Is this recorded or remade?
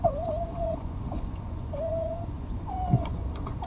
remade